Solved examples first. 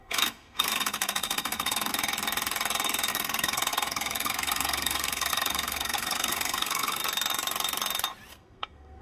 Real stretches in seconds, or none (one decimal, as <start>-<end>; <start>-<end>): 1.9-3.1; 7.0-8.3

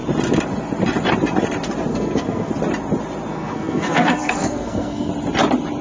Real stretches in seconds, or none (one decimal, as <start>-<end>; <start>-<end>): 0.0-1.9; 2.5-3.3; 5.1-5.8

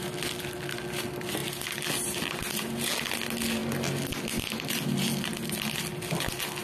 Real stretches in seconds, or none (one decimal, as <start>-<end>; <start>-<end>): 0.0-6.6